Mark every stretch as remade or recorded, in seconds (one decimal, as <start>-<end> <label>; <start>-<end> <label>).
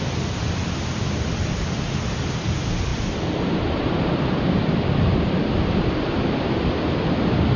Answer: 0.0-7.6 recorded